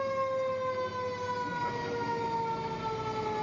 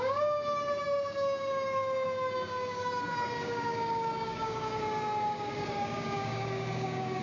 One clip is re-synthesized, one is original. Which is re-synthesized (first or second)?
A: second